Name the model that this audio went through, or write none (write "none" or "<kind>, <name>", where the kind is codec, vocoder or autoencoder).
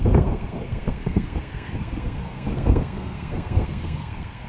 codec, SNAC